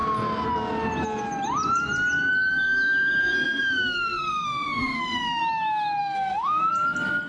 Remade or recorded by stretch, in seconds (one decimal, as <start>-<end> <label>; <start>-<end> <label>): 0.0-3.2 recorded; 3.2-5.4 remade; 5.4-6.0 recorded; 6.0-6.7 remade; 6.7-7.3 recorded